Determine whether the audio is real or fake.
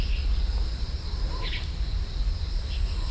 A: real